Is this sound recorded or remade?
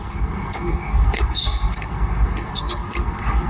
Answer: remade